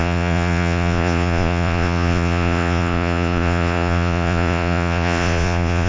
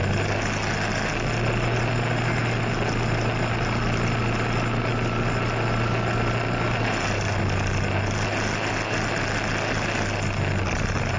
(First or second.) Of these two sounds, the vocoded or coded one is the first